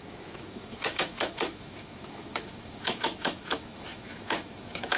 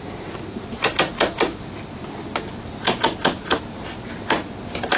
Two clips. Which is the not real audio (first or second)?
first